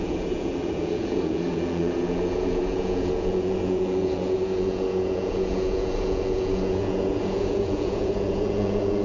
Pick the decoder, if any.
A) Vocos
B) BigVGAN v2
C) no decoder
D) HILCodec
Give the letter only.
A